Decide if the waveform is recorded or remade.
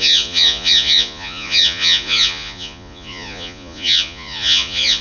remade